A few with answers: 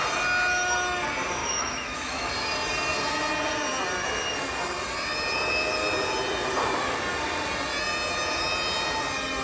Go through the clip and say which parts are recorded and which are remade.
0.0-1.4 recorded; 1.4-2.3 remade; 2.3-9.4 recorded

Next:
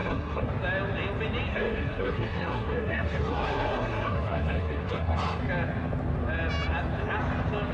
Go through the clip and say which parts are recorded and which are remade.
0.0-0.5 remade; 0.5-1.5 recorded; 1.5-5.4 remade; 5.4-7.7 recorded

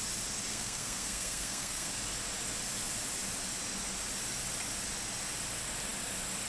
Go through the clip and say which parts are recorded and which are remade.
0.0-0.5 recorded; 0.5-1.9 remade; 1.9-6.5 recorded

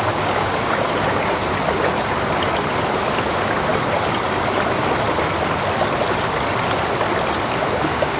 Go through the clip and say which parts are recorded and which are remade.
0.0-1.4 remade; 1.4-3.3 recorded; 3.3-3.7 remade; 3.7-7.6 recorded; 7.6-8.2 remade

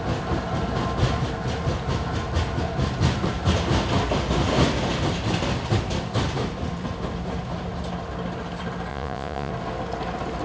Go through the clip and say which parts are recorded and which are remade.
0.0-8.9 recorded; 8.9-9.5 remade; 9.5-10.4 recorded

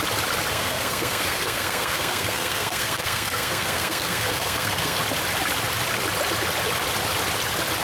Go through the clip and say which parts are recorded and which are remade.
0.0-0.5 recorded; 0.5-5.0 remade; 5.0-7.8 recorded